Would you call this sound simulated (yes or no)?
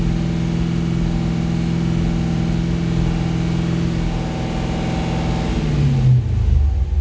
no